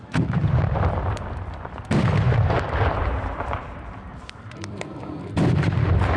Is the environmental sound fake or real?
fake